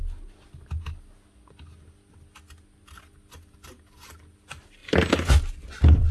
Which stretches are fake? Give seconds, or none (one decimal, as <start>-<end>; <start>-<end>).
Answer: none